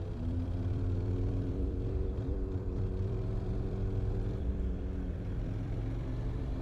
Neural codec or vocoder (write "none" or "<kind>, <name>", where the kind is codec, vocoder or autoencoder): vocoder, BigVGAN v2